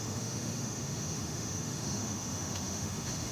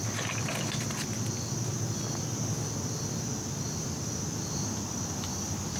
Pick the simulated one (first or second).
first